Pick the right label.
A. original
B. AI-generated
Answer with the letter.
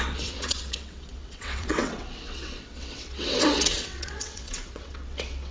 B